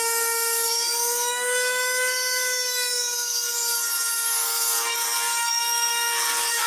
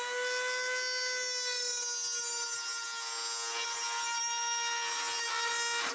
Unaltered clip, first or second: second